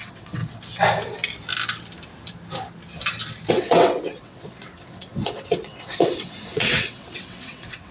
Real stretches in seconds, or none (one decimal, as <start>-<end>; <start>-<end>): 0.4-3.5